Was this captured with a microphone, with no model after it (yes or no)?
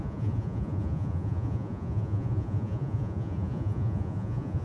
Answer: no